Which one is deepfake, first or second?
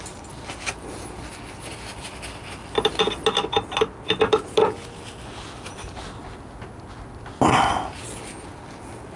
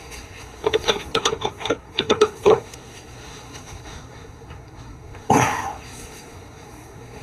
second